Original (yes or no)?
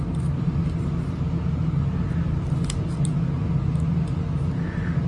yes